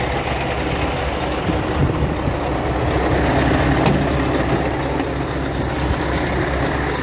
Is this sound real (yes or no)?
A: yes